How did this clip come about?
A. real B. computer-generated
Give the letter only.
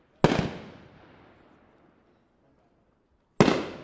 A